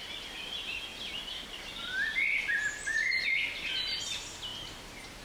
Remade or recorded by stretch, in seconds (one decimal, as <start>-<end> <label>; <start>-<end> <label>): 0.0-5.2 recorded